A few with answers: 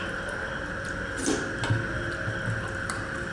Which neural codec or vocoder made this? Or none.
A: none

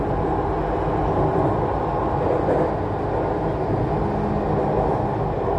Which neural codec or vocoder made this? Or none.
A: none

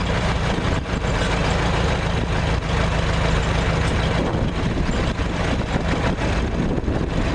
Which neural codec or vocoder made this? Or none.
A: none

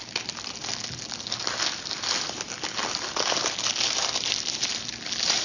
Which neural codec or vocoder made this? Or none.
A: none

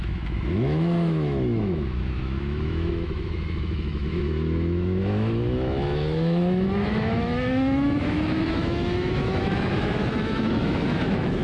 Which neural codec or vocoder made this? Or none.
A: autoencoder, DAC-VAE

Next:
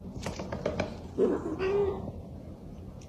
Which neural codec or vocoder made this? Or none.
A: none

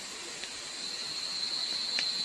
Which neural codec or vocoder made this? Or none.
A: none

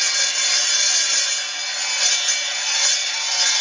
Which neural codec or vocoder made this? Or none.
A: none